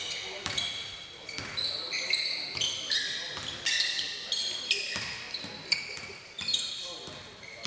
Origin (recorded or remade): recorded